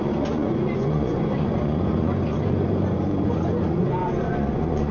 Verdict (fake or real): fake